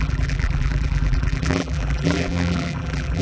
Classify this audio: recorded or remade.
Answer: remade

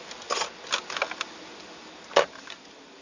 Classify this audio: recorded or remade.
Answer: recorded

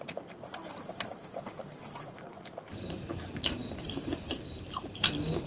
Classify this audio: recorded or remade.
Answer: remade